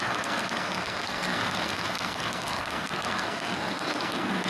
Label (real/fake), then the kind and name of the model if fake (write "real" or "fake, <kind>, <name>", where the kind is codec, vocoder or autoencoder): fake, codec, SNAC